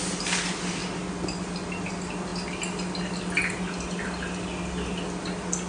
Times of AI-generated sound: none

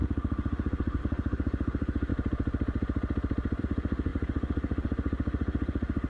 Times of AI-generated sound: 0.0-2.1 (autoencoder, DAC-VAE); 3.6-6.1

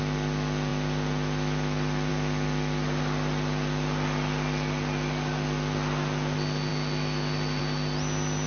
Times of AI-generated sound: none